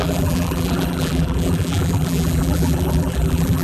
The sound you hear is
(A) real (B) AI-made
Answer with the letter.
B